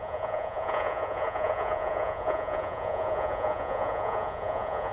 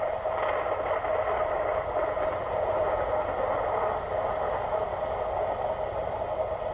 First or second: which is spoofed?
first